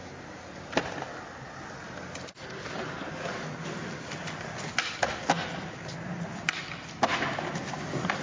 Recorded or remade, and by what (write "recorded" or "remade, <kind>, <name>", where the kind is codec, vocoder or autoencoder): recorded